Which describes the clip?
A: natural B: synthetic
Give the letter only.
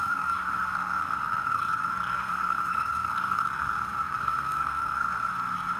B